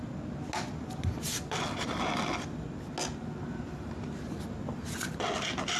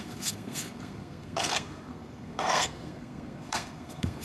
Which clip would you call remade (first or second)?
second